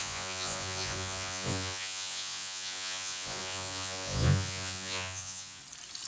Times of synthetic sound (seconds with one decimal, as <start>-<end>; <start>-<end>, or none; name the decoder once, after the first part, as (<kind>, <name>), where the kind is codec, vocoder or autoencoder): 0.0-5.6 (vocoder, Vocos)